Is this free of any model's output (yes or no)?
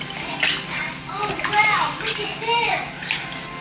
yes